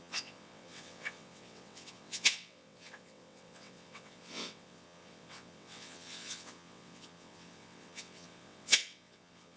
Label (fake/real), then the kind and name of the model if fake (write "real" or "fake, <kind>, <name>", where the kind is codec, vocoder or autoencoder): fake, vocoder, WaveNeXt